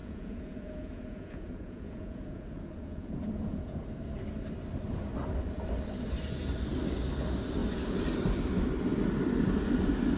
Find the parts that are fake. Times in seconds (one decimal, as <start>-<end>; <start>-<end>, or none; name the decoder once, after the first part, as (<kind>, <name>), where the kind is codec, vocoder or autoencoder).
0.0-3.9 (vocoder, Vocos)